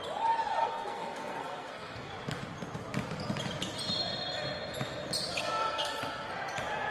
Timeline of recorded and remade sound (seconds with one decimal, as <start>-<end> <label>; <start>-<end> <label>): 0.0-0.6 recorded; 0.6-2.1 remade; 2.1-5.4 recorded; 5.4-6.0 remade; 6.0-6.9 recorded